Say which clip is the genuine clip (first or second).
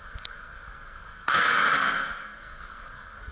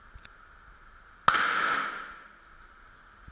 second